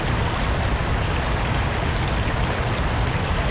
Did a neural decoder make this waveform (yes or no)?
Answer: no